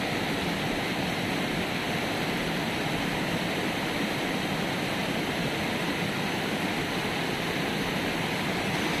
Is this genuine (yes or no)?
no